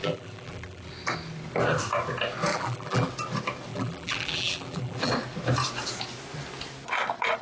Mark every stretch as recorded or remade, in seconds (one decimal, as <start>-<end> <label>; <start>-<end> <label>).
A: 0.0-0.9 remade; 0.9-2.5 recorded; 2.5-3.1 remade; 3.1-3.7 recorded; 3.7-5.1 remade; 5.1-7.4 recorded